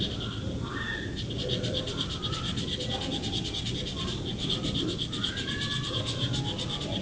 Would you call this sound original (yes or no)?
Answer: yes